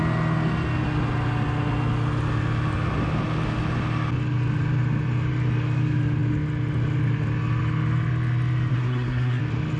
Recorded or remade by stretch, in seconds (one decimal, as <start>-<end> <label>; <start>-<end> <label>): 0.0-8.7 recorded; 8.7-9.4 remade; 9.4-9.8 recorded